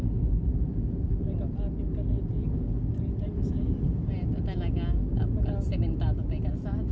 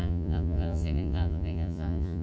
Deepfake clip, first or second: second